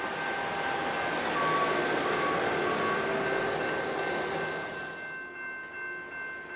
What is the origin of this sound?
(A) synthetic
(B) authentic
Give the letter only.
B